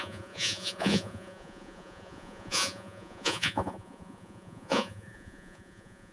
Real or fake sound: fake